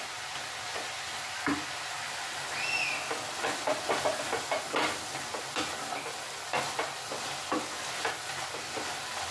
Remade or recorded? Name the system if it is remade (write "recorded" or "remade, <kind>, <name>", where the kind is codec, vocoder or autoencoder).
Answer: recorded